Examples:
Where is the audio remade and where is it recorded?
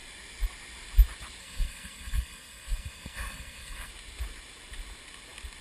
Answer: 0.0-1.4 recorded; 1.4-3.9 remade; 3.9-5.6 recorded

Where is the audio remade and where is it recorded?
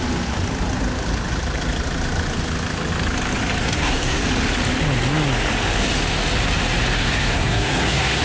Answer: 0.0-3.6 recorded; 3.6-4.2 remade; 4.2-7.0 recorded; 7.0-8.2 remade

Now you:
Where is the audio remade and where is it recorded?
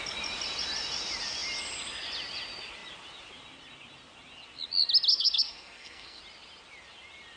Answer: 0.0-5.1 recorded; 5.1-6.2 remade; 6.2-7.4 recorded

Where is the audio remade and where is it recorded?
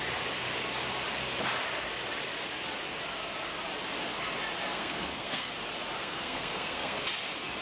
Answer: 0.0-4.7 recorded; 4.7-5.5 remade; 5.5-6.0 recorded; 6.0-7.0 remade; 7.0-7.6 recorded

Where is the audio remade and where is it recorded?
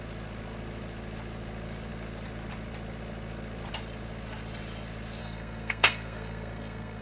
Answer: 0.0-5.2 recorded; 5.2-7.0 remade